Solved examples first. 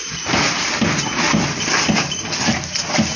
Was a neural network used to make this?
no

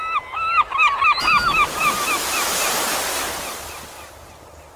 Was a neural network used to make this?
no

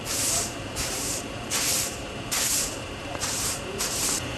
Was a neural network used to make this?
yes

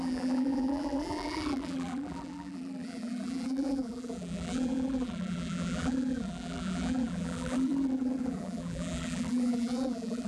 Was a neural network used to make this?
yes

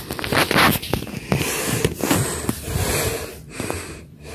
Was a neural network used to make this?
no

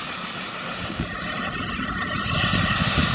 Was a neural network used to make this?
yes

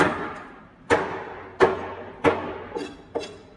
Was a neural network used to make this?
no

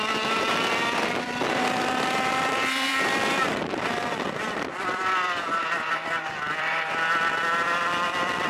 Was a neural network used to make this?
yes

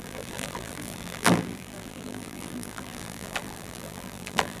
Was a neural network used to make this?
yes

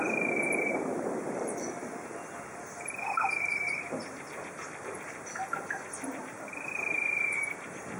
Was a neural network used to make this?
yes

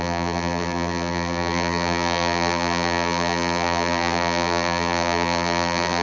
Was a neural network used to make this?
yes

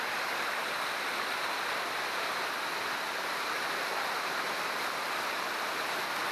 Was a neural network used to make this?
no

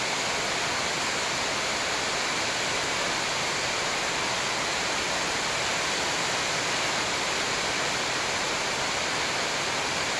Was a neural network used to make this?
no